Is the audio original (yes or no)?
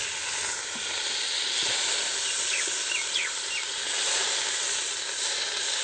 yes